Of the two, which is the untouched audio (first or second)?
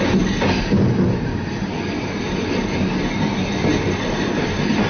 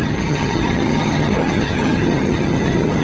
first